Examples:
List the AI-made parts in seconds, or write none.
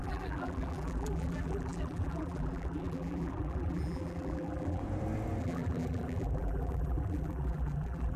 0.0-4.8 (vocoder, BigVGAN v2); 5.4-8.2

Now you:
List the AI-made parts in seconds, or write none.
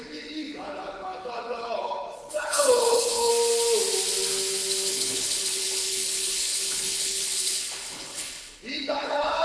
0.0-3.3 (codec, HILCodec); 4.9-9.4